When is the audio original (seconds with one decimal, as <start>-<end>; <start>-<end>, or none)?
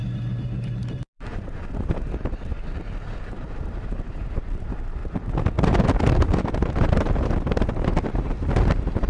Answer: 2.5-3.1; 5.0-5.6